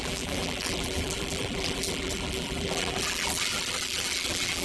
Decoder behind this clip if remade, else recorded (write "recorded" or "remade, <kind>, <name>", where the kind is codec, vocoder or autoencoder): remade, vocoder, BigVGAN v2